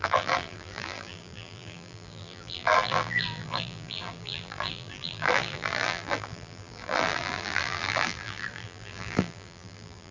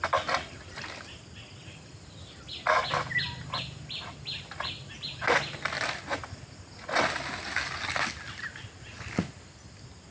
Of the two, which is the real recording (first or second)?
second